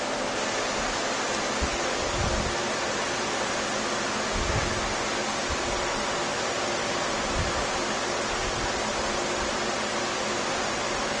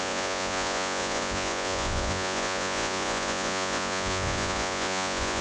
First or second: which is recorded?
first